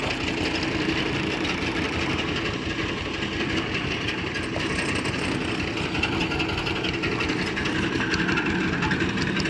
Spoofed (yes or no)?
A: no